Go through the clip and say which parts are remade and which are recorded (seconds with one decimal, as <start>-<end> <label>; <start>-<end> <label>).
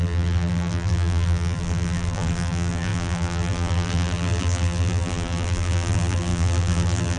0.0-7.2 remade